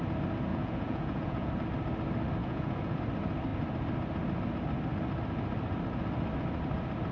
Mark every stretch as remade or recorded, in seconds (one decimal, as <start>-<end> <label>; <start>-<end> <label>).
0.0-0.5 recorded; 0.5-1.5 remade; 1.5-2.4 recorded; 2.4-3.0 remade; 3.0-7.1 recorded